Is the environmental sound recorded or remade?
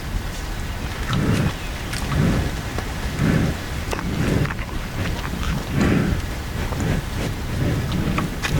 recorded